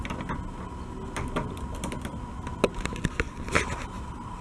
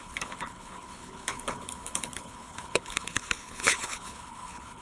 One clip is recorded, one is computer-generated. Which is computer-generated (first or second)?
second